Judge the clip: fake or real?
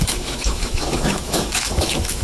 fake